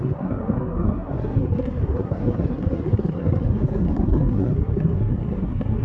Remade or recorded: remade